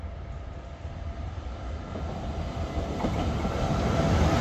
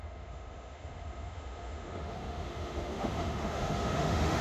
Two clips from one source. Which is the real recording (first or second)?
first